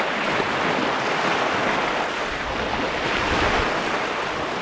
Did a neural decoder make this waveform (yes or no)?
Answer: no